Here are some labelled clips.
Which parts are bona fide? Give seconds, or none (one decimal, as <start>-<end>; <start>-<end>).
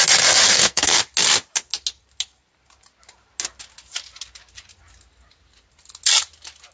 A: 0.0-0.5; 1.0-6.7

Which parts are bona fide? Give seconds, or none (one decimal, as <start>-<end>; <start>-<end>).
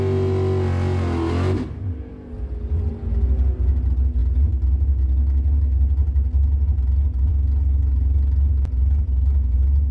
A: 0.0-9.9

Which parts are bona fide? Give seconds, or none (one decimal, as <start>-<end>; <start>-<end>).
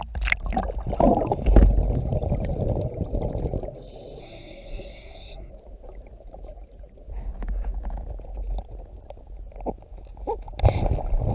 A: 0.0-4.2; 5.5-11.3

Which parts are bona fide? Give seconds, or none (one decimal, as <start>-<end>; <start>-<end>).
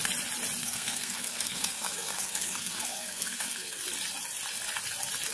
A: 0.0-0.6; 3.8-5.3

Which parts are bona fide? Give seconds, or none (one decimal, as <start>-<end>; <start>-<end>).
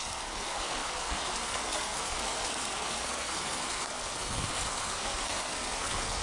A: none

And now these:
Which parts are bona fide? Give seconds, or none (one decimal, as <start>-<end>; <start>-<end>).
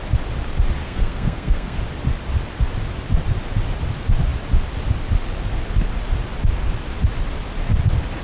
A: 0.0-0.8; 1.8-8.2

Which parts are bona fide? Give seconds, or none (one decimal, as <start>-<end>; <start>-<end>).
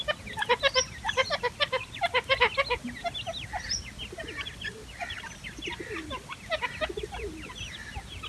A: 0.0-8.3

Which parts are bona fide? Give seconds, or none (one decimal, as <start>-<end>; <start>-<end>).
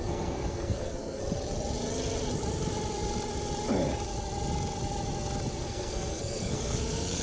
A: 1.2-5.5